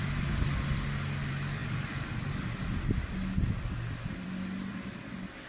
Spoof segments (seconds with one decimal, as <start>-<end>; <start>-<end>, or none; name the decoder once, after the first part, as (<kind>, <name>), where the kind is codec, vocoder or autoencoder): none